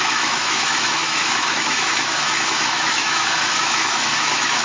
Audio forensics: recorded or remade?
remade